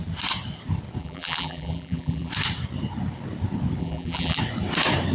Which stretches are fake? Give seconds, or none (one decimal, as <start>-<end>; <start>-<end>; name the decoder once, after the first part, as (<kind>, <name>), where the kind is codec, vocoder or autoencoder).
1.0-2.3 (vocoder, BigVGAN v2); 3.8-4.4

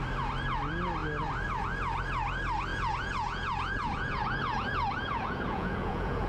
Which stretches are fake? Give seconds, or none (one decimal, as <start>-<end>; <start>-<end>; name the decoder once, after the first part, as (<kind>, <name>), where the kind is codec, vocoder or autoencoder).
2.7-6.3 (vocoder, Vocos)

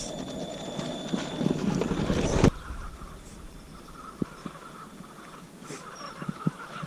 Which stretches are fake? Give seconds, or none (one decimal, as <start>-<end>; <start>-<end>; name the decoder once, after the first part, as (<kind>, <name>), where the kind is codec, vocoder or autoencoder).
0.0-4.4 (vocoder, BigVGAN v2); 5.7-6.9

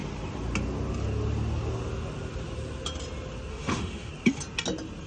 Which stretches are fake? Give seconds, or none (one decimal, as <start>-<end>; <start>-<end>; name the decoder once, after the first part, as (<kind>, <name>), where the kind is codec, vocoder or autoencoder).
3.5-4.1 (autoencoder, DAC-VAE)

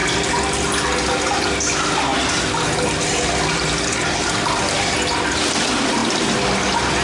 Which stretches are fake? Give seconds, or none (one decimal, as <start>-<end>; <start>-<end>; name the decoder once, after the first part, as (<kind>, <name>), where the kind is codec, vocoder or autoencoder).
none